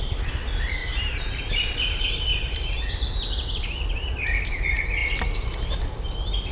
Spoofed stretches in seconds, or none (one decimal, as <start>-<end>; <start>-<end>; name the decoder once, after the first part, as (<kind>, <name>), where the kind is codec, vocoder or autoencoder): 0.8-1.4 (vocoder, BigVGAN v2); 2.3-2.9